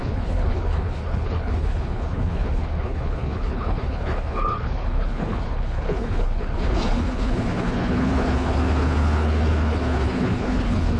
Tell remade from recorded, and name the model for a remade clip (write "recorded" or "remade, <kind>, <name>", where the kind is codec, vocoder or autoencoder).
remade, codec, HILCodec